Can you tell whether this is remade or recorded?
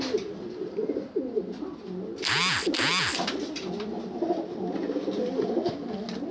recorded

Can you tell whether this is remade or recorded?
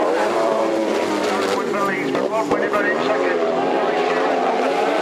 remade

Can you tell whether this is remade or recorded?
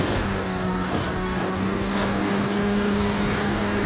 remade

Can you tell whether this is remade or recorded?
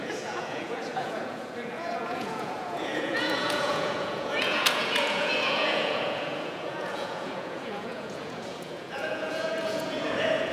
remade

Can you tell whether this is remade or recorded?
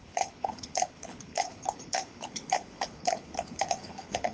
remade